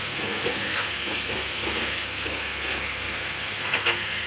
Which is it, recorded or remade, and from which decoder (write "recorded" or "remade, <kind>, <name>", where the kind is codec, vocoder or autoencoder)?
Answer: remade, codec, SNAC